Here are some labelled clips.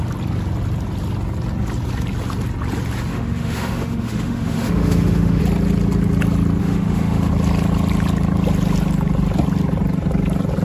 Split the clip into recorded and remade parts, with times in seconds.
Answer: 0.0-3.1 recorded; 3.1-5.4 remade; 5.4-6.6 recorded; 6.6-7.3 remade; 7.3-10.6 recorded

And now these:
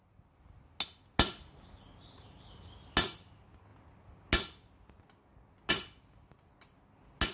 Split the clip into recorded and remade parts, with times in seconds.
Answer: 0.0-7.3 recorded

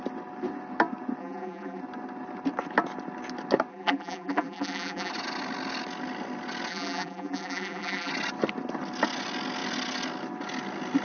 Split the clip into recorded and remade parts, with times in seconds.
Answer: 0.0-1.2 recorded; 1.2-1.8 remade; 1.8-3.7 recorded; 3.7-5.1 remade; 5.1-6.7 recorded; 6.7-8.1 remade; 8.1-11.0 recorded

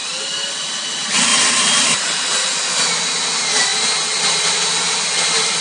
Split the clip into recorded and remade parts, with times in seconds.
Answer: 0.0-1.3 remade; 1.3-3.3 recorded; 3.3-3.7 remade; 3.7-4.8 recorded; 4.8-5.6 remade

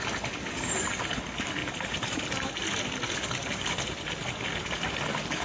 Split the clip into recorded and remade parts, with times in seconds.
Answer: 0.0-1.6 recorded; 1.6-2.2 remade; 2.2-5.4 recorded

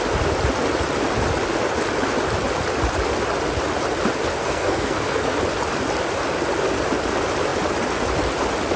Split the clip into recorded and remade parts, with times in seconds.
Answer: 0.0-4.3 recorded; 4.3-5.4 remade; 5.4-8.8 recorded